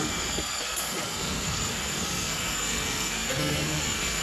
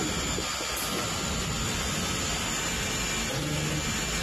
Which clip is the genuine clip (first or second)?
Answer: second